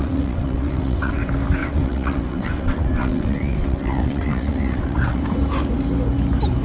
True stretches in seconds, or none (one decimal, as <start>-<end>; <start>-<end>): 1.2-1.6; 5.2-6.6